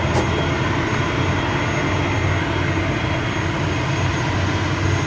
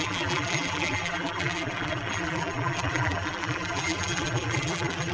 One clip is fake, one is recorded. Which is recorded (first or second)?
first